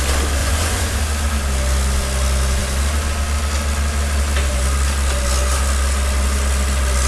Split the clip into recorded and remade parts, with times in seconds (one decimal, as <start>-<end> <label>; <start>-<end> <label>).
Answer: 0.0-0.4 recorded; 0.4-1.0 remade; 1.0-7.1 recorded